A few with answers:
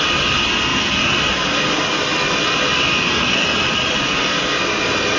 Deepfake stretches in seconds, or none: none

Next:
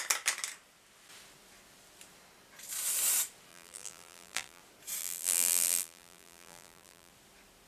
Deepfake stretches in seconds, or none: 3.5-4.6 (vocoder, BigVGAN v2); 5.0-7.1

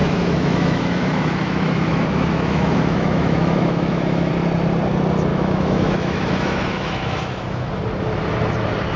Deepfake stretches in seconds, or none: 0.0-4.3 (autoencoder, DAC-VAE); 5.3-7.7

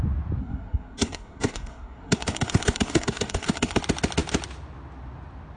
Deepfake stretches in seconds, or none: 0.4-3.8 (codec, SNAC)

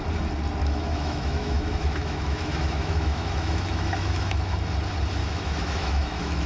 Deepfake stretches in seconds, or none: 0.6-4.5 (autoencoder, DAC-VAE); 5.2-6.5